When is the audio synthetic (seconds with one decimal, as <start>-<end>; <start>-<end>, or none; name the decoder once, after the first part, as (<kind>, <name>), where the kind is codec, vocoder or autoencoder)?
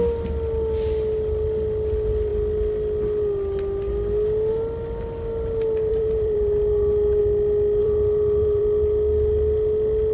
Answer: 5.9-7.2 (vocoder, BigVGAN v2); 7.8-8.6